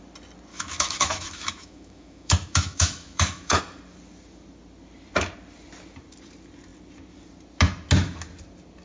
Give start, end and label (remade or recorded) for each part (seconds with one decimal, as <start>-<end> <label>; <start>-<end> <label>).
0.0-0.5 recorded; 0.5-3.6 remade; 3.6-8.8 recorded